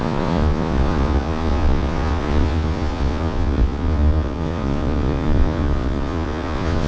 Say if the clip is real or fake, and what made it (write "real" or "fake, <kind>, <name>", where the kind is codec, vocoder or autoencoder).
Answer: fake, vocoder, Vocos